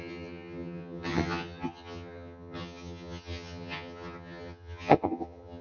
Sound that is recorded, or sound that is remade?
remade